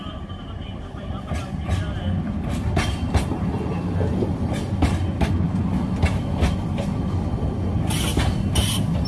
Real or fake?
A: real